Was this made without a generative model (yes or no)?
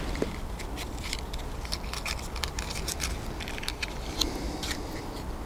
yes